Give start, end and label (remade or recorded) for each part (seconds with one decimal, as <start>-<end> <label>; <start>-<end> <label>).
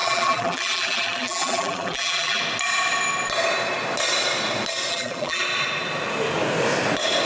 0.0-2.4 remade; 2.4-4.9 recorded; 4.9-5.4 remade; 5.4-7.3 recorded